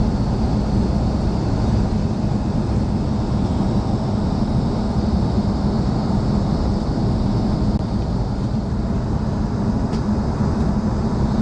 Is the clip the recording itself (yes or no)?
yes